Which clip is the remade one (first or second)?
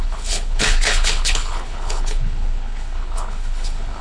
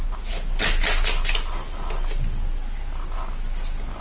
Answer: first